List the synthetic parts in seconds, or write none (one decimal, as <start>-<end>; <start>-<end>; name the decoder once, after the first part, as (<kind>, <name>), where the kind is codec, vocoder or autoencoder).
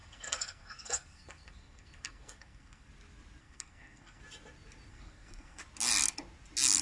0.0-2.9 (codec, SNAC); 3.4-4.2; 4.9-5.6